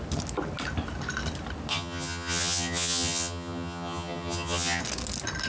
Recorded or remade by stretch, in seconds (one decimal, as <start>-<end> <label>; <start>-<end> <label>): 0.0-1.7 recorded; 1.7-4.8 remade; 4.8-5.5 recorded